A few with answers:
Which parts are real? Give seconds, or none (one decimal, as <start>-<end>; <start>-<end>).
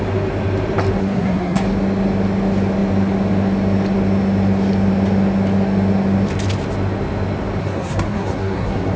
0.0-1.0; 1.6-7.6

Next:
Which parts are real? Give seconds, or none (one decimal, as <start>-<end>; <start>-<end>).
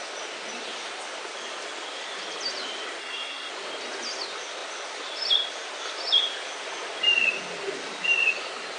0.0-3.0; 3.5-8.8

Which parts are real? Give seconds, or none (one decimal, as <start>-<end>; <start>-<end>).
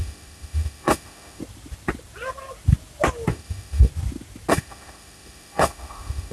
1.4-3.3; 3.9-4.5